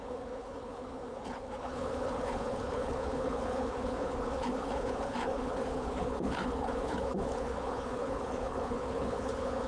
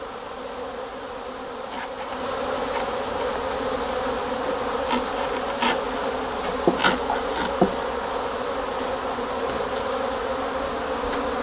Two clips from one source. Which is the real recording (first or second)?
second